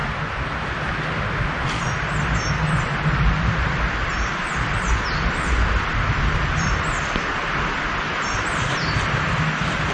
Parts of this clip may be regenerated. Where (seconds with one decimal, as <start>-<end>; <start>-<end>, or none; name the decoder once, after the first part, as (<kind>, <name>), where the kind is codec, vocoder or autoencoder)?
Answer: none